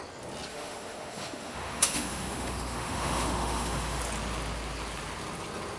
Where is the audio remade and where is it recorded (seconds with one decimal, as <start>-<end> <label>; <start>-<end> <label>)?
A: 0.0-0.5 recorded; 0.5-4.0 remade; 4.0-5.8 recorded